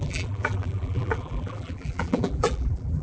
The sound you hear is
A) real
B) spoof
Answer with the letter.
B